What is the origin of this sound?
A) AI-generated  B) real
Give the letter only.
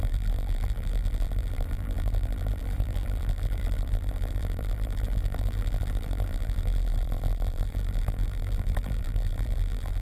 A